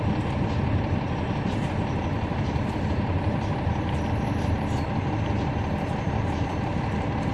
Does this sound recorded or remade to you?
remade